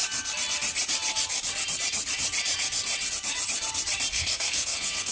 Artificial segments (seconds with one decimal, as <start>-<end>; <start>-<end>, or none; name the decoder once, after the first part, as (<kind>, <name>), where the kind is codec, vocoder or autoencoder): 4.1-5.1 (codec, SNAC)